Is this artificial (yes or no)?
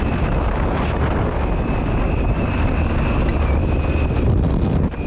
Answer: no